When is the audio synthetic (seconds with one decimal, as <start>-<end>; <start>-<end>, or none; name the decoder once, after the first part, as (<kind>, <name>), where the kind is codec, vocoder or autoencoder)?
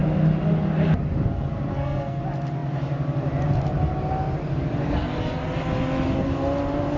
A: 1.7-2.2 (codec, SNAC)